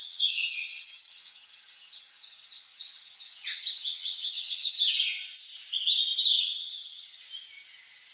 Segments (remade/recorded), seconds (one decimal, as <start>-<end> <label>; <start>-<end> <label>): 0.0-4.9 remade; 4.9-6.4 recorded; 6.4-7.2 remade; 7.2-8.1 recorded